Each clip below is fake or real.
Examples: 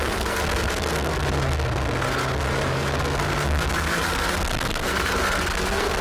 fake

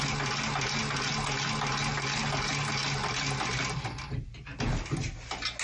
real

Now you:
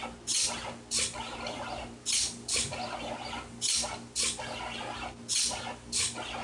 real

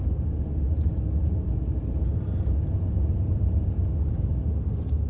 real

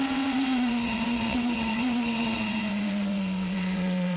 fake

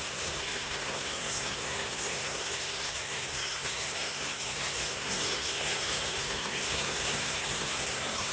fake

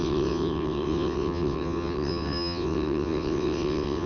fake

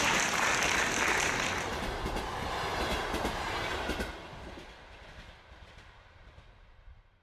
real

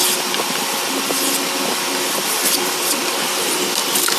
real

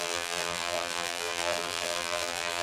fake